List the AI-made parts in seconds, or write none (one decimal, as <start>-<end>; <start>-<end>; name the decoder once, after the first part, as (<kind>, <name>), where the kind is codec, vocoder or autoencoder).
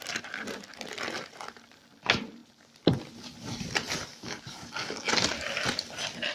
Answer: 4.1-5.1 (codec, DAC)